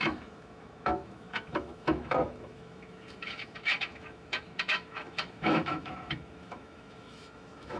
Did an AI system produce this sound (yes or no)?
yes